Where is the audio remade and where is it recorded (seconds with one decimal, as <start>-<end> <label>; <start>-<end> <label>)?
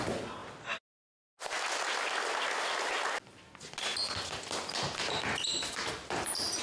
0.0-5.5 recorded; 5.5-6.6 remade